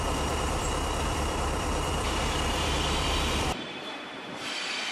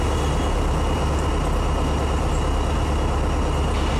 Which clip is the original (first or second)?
second